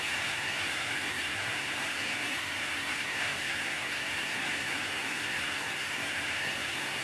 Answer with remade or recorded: remade